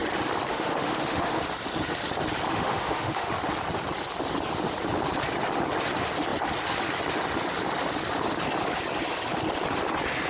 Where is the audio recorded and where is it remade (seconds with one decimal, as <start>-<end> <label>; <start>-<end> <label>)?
0.0-0.5 recorded; 0.5-1.4 remade; 1.4-2.5 recorded; 2.5-3.3 remade; 3.3-10.3 recorded